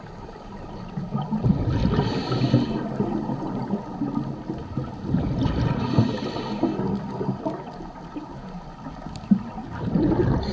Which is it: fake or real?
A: real